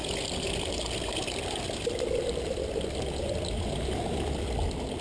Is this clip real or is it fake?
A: real